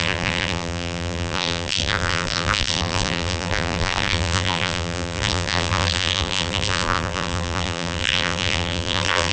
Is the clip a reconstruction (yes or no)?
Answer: yes